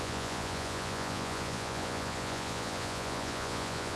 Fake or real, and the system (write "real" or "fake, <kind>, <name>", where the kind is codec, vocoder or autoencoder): fake, vocoder, Vocos